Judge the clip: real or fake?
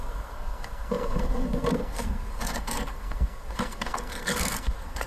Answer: fake